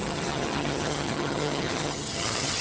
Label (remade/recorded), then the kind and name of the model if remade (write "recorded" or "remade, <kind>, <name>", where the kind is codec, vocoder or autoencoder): remade, vocoder, HiFi-GAN